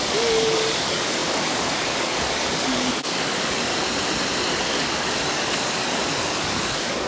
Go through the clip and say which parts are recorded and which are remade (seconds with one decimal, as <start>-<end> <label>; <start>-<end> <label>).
0.0-3.7 remade; 3.7-4.5 recorded; 4.5-7.1 remade